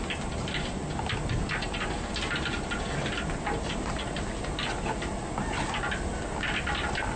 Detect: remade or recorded recorded